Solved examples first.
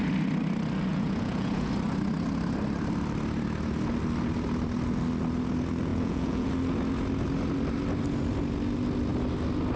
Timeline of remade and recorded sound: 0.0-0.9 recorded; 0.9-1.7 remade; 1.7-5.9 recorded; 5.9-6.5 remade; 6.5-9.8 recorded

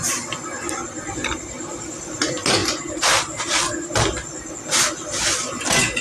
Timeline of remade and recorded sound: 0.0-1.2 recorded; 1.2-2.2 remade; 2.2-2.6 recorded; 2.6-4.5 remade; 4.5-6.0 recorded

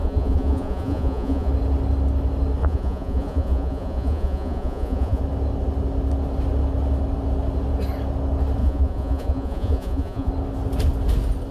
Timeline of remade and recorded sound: 0.0-1.5 remade; 1.5-2.6 recorded; 2.6-5.2 remade; 5.2-8.6 recorded; 8.6-10.3 remade; 10.3-11.5 recorded

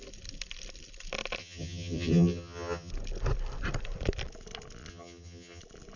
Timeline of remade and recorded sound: 0.0-1.4 recorded; 1.4-2.9 remade; 2.9-4.9 recorded; 4.9-5.6 remade; 5.6-6.0 recorded